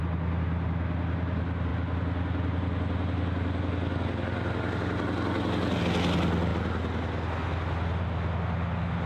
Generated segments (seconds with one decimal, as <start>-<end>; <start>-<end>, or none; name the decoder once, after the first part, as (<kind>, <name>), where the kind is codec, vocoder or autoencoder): none